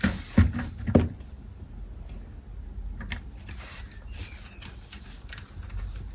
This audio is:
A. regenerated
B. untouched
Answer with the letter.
B